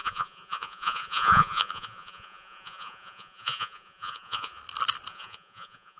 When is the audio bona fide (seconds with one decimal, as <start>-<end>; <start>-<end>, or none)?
4.6-5.1